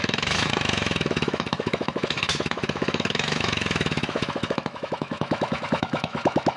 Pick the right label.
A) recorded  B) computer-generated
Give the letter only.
B